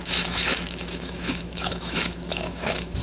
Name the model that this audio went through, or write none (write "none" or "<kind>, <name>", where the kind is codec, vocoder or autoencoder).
autoencoder, DAC-VAE